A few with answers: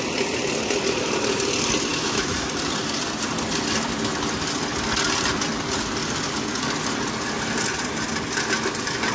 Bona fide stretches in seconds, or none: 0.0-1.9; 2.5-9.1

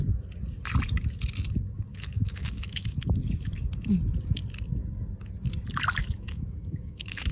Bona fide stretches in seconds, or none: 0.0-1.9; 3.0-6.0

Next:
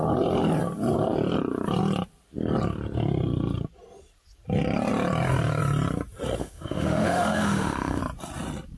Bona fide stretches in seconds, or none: 0.0-6.4; 8.0-8.8

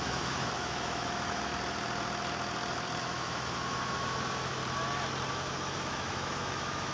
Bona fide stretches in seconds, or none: 1.5-3.0; 4.6-5.3

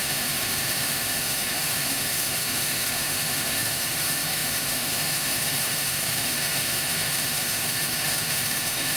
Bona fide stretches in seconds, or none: none

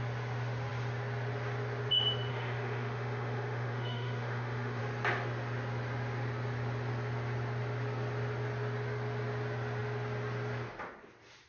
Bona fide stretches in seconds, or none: 0.0-2.3; 4.8-11.5

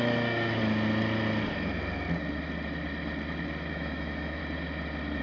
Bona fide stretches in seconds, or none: 0.6-3.7; 4.4-5.2